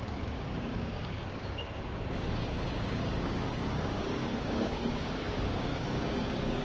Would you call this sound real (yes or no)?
no